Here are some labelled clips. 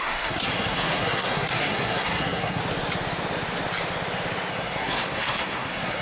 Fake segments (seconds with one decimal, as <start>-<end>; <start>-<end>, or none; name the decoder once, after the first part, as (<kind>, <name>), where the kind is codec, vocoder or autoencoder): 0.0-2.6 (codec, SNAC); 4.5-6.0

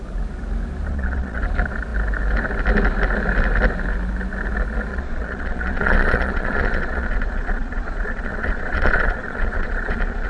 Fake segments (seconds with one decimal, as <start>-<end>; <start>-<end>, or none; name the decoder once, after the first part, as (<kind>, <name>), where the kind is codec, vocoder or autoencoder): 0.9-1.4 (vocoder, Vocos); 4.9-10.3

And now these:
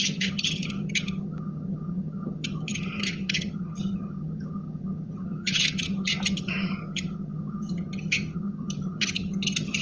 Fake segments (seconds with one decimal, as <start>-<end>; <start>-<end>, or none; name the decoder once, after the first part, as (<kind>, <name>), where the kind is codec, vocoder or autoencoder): 0.0-9.8 (vocoder, HiFi-GAN)

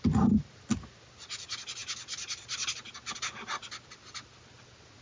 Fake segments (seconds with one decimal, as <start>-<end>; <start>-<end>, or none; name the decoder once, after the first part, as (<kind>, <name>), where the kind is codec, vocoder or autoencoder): none

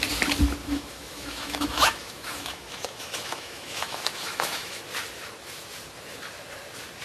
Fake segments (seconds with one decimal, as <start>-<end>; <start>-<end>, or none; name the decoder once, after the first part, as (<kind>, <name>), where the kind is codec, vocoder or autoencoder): 0.6-4.8 (autoencoder, DAC-VAE)

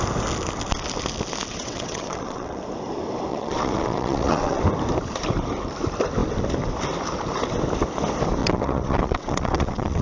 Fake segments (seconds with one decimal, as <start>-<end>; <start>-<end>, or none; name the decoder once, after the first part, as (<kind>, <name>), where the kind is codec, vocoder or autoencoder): 1.5-2.6 (vocoder, WaveNeXt); 3.3-4.6; 8.4-10.0

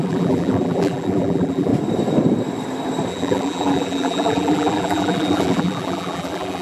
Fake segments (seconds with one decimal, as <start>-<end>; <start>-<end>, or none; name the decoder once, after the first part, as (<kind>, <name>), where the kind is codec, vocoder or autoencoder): 0.0-1.7 (vocoder, BigVGAN v2); 3.1-6.6

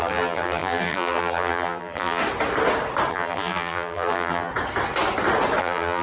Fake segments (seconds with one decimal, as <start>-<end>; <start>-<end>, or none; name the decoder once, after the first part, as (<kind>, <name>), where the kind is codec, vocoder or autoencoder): 0.0-2.2 (vocoder, BigVGAN v2); 3.1-4.5; 5.6-6.0